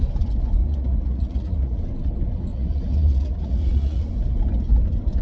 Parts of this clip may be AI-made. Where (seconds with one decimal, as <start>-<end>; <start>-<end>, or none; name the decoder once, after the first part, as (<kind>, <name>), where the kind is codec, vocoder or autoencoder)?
0.6-1.8 (vocoder, Vocos); 2.5-4.1